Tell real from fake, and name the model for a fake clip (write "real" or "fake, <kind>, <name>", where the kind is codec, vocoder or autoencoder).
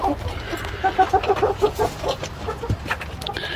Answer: real